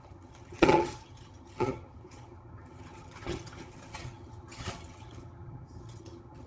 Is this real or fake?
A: fake